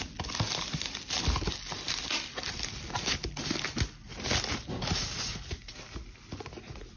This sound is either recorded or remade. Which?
recorded